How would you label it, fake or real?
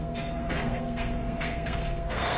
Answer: fake